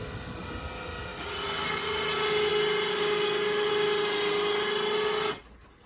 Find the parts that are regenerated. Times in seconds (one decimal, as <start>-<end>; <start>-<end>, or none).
none

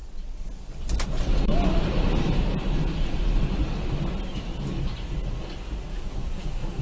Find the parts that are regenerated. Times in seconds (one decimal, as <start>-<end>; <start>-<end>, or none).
5.9-6.8

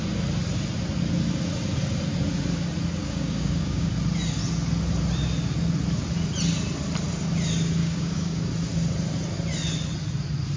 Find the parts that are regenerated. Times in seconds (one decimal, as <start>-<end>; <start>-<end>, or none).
3.0-3.9; 7.8-8.4

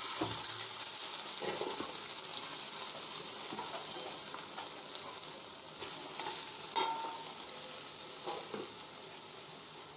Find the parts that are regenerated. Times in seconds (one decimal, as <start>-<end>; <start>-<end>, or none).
none

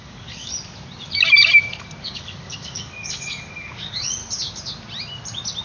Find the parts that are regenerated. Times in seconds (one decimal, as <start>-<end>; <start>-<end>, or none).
0.0-0.5; 2.0-4.2

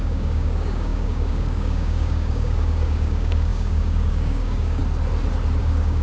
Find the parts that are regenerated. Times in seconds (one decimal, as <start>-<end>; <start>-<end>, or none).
0.0-4.8; 5.6-6.0

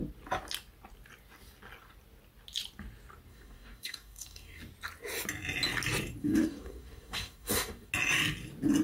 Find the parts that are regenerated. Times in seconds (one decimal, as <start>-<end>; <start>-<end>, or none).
3.3-4.6; 6.2-7.9